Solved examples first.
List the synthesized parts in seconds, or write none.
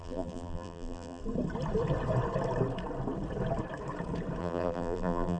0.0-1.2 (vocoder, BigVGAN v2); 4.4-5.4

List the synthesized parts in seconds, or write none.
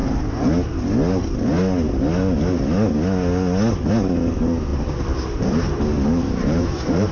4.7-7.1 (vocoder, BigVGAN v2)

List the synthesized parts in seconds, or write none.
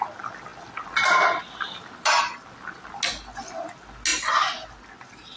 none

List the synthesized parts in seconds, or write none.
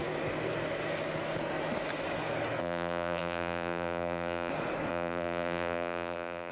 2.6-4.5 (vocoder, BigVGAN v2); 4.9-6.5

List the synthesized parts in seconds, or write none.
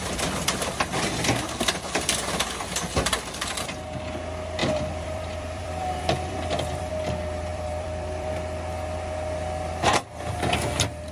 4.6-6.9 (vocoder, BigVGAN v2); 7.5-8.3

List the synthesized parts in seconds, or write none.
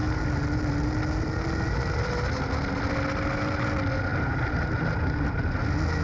none